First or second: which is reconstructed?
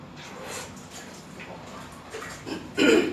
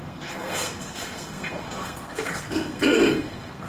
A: second